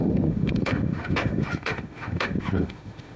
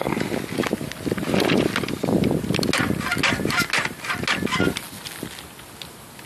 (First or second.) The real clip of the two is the second